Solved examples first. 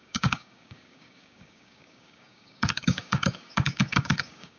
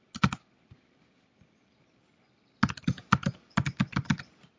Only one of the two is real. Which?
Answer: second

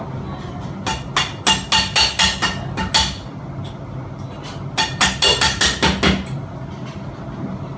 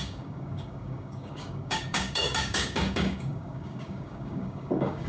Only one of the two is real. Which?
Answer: first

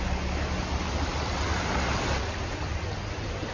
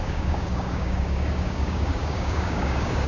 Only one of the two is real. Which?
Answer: first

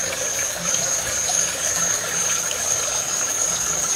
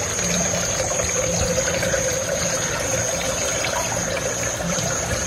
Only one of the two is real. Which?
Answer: second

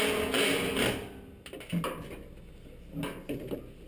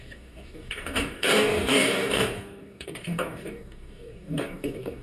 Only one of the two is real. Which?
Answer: first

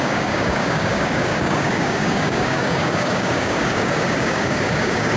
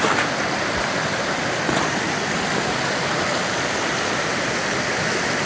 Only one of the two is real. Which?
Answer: second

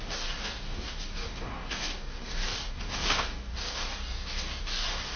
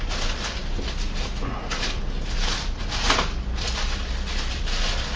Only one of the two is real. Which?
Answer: second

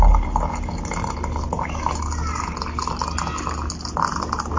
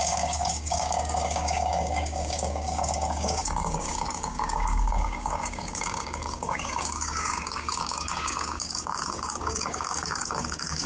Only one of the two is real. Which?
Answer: first